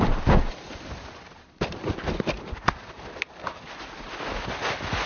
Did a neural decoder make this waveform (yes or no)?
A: yes